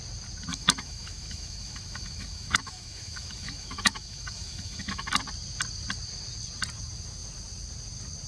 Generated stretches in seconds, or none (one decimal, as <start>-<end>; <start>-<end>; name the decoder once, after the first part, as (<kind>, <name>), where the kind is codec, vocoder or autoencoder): 0.5-5.1 (autoencoder, DAC-VAE)